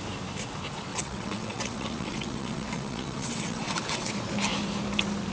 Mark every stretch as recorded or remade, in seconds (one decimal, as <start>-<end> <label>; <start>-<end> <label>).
0.0-0.9 recorded; 0.9-4.1 remade; 4.1-5.3 recorded